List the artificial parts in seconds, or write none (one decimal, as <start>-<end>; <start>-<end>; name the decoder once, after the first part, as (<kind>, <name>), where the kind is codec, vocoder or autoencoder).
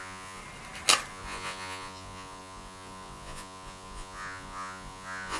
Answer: 0.0-0.4 (vocoder, Vocos); 1.1-5.4